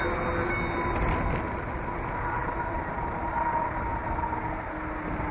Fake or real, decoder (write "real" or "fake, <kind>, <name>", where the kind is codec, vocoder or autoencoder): real